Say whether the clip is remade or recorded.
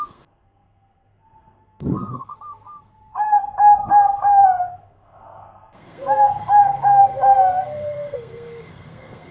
remade